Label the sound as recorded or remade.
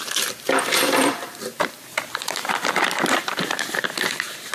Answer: remade